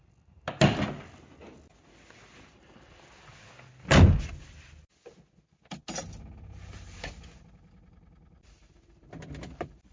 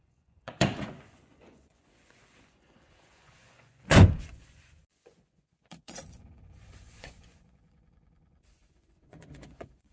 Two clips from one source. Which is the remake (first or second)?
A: second